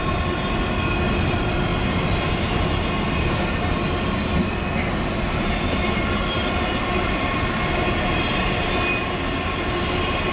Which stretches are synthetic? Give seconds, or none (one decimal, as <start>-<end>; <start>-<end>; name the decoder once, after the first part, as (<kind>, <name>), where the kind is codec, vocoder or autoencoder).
none